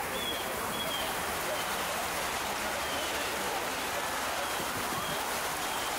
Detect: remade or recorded recorded